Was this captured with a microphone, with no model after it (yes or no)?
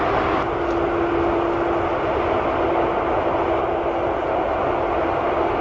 yes